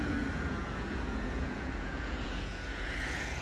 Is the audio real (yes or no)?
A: no